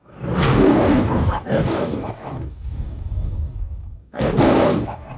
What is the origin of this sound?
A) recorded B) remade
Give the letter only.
B